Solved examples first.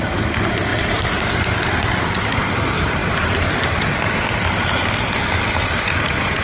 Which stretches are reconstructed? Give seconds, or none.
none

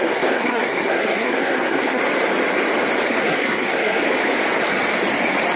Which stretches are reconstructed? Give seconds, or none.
0.0-2.0 (codec, SNAC); 3.1-4.0

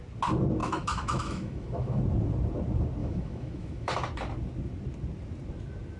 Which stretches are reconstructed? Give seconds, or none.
0.6-2.0 (autoencoder, DAC-VAE); 3.0-3.9

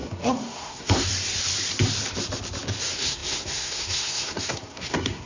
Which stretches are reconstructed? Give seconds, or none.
0.0-1.1 (codec, SNAC); 2.8-5.3

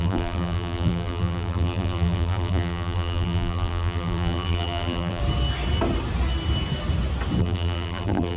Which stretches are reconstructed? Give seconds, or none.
0.0-5.2 (vocoder, BigVGAN v2); 7.4-8.4

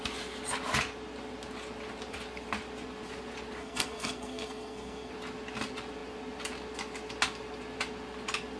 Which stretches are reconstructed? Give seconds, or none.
3.6-5.1 (codec, SNAC)

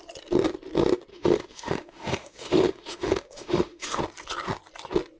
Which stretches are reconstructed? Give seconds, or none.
1.1-4.0 (autoencoder, DAC-VAE)